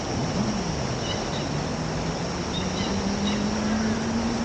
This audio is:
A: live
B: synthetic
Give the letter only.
A